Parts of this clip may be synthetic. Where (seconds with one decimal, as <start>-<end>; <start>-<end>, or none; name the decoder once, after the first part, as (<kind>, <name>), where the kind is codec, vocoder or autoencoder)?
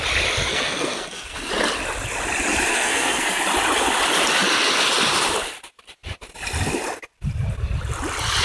0.5-1.5 (codec, SNAC); 2.7-3.3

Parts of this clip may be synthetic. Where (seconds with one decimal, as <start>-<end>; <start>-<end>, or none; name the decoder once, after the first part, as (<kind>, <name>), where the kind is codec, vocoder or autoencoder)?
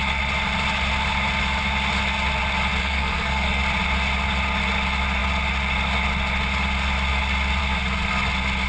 2.8-3.6 (codec, SNAC)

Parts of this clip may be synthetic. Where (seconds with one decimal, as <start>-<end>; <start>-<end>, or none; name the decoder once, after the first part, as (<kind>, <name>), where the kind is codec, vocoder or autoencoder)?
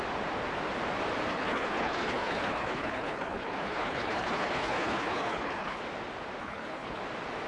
1.3-5.8 (codec, HILCodec); 6.4-7.0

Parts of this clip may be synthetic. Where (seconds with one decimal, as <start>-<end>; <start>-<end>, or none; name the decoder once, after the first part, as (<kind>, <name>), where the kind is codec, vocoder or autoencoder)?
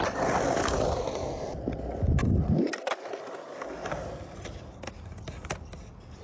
none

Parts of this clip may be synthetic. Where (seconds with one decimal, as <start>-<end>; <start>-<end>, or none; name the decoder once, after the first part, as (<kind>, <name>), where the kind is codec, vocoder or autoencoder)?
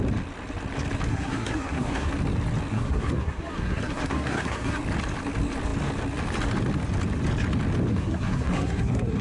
1.1-2.1 (codec, SNAC); 2.7-4.8; 7.9-9.2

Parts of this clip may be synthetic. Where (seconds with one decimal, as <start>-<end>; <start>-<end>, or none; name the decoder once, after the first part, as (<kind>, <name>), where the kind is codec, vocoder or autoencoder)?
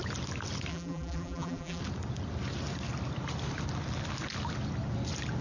0.7-1.8 (vocoder, BigVGAN v2)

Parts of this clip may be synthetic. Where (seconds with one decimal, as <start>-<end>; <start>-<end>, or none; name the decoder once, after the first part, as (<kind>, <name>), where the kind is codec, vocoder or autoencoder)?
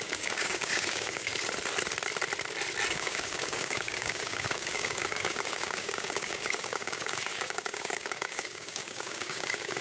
0.0-1.3 (codec, DAC); 2.9-9.8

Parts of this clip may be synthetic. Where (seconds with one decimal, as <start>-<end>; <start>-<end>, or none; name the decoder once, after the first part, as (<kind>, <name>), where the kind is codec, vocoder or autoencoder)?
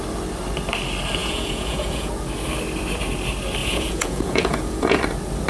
1.2-2.1 (vocoder, Vocos); 3.6-5.0